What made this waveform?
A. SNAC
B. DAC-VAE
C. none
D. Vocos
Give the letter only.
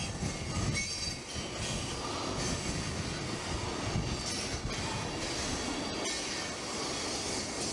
C